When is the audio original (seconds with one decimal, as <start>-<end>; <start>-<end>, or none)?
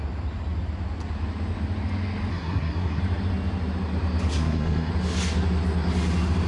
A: 0.0-2.3; 3.0-4.3; 4.9-6.5